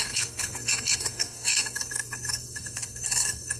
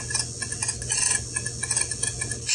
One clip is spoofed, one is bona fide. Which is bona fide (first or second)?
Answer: second